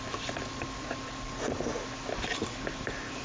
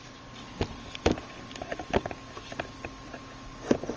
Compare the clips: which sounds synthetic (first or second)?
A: first